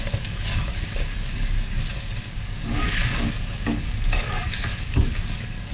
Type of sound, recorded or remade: remade